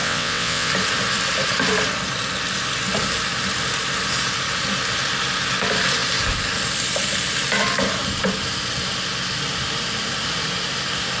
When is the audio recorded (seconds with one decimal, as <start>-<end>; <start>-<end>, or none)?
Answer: 0.7-11.2